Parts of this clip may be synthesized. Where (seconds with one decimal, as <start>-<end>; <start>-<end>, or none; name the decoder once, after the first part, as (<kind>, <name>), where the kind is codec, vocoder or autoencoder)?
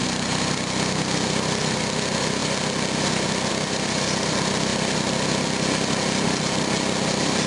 none